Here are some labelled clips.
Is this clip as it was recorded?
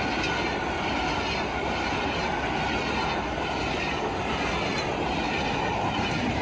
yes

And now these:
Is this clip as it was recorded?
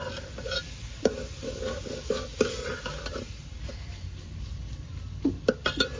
yes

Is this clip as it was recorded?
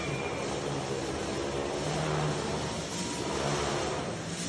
yes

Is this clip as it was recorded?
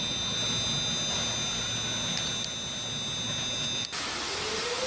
yes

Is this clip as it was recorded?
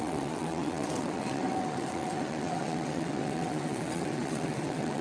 no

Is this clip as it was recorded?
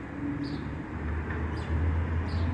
yes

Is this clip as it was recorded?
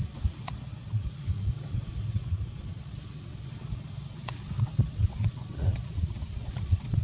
no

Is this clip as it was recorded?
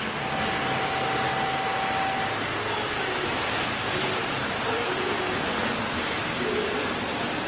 yes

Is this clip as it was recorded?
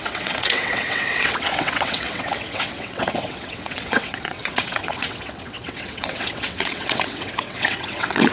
no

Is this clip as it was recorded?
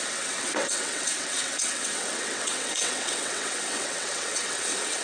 no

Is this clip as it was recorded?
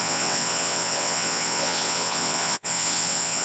no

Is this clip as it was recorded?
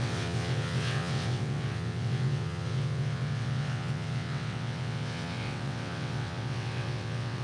no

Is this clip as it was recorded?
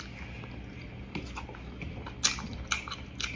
yes